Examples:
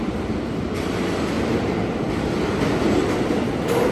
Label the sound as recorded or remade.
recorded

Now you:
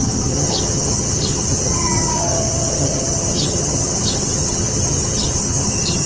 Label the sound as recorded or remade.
remade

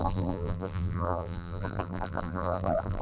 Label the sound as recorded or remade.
remade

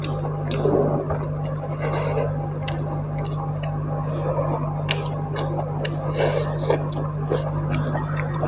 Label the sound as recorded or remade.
recorded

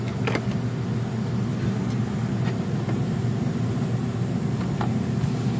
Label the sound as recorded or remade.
recorded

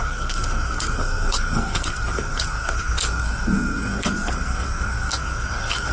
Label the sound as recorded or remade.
remade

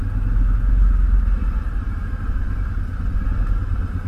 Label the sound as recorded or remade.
recorded